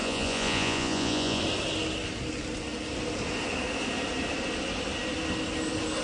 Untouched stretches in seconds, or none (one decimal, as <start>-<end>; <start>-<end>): 1.4-6.0